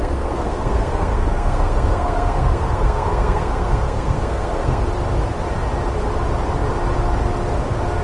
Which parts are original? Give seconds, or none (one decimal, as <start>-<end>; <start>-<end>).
4.8-8.0